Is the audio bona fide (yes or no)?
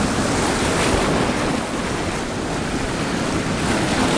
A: yes